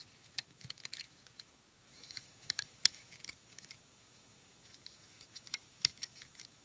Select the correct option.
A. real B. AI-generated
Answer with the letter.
B